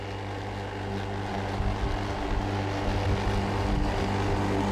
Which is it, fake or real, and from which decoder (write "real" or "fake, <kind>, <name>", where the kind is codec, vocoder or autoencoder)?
real